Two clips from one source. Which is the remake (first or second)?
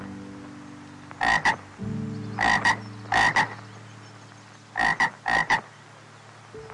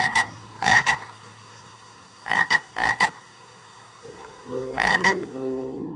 second